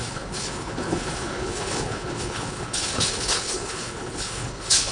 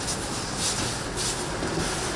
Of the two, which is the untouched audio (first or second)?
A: second